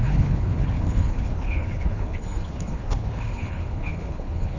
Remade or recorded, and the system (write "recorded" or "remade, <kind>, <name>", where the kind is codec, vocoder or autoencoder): remade, codec, HILCodec